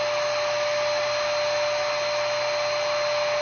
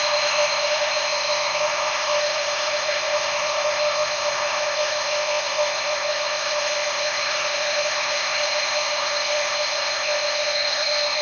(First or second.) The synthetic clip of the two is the second